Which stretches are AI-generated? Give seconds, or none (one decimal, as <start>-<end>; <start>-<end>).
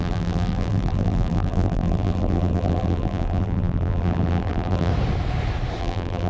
0.0-4.9; 5.8-6.3